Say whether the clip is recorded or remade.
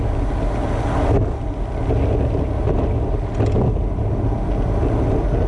recorded